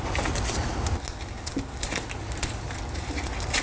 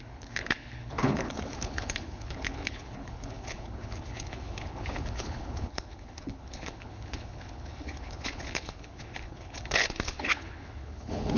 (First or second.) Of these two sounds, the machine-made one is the second